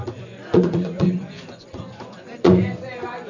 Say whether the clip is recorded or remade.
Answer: remade